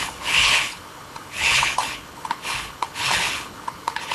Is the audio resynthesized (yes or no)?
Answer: yes